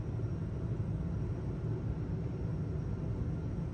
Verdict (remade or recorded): recorded